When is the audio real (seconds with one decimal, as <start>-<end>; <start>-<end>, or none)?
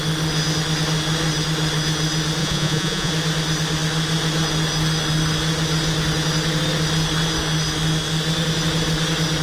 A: 0.0-2.4; 3.1-9.4